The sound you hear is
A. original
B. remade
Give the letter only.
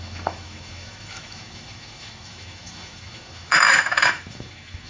B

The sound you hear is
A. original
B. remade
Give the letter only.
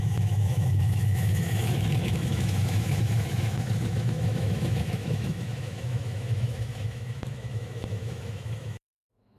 B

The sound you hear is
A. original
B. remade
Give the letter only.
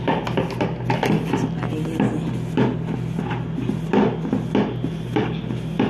A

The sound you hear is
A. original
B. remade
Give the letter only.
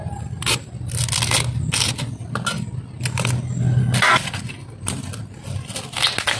A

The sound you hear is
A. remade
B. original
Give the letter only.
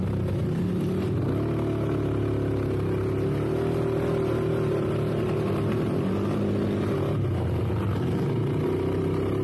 B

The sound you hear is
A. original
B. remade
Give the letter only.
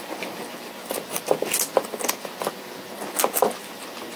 A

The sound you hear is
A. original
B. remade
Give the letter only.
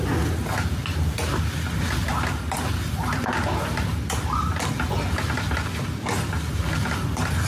A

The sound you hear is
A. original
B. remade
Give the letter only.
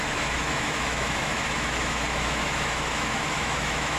B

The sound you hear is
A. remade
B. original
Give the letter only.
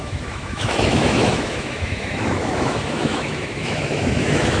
A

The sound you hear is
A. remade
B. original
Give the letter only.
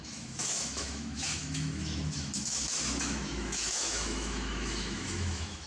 A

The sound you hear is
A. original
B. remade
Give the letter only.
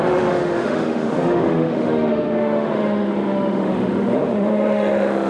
B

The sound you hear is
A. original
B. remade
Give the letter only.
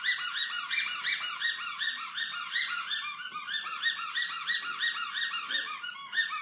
A